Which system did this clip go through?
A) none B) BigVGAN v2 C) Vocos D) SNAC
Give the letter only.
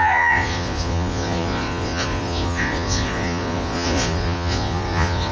C